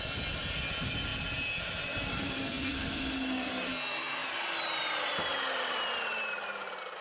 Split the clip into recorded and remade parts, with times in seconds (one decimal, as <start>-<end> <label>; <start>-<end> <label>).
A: 0.0-2.1 recorded; 2.1-3.5 remade; 3.5-7.0 recorded